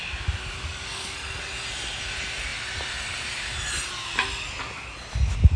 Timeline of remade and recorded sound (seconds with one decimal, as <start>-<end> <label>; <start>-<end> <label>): 0.0-0.7 recorded; 0.7-1.4 remade; 1.4-5.6 recorded